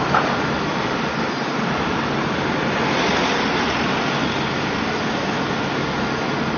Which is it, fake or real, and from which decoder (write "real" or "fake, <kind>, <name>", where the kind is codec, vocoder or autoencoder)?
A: real